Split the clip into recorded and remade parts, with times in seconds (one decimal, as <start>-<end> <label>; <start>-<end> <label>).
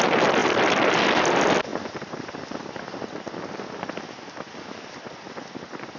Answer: 0.0-6.0 recorded